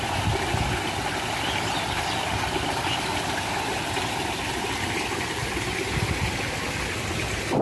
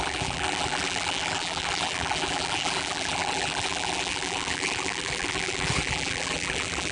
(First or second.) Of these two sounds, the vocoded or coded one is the second